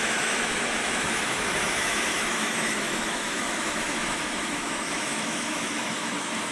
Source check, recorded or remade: remade